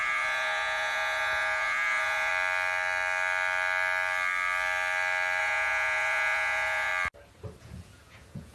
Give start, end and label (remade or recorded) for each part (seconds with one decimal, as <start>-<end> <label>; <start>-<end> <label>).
0.0-2.3 remade; 2.3-5.4 recorded; 5.4-6.9 remade; 6.9-7.6 recorded; 7.6-8.5 remade